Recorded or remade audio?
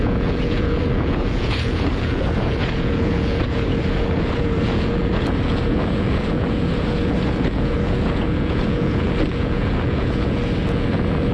remade